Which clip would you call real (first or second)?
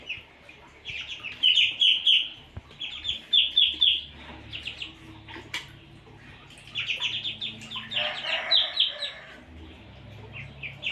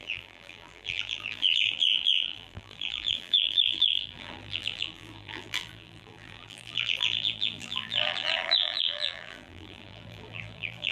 first